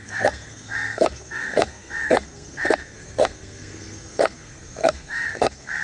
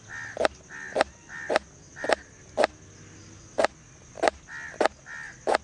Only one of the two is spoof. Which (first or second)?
first